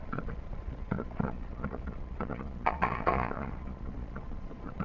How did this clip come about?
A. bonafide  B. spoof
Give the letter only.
B